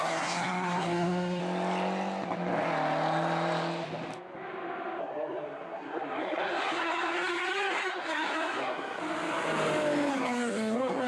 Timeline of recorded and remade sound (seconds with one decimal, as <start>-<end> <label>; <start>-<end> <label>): 0.0-1.4 remade; 1.4-5.0 recorded; 5.0-9.0 remade; 9.0-10.1 recorded; 10.1-11.1 remade